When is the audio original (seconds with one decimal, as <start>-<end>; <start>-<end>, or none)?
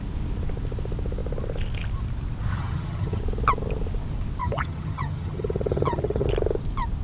0.0-2.5; 3.2-4.4; 6.3-7.0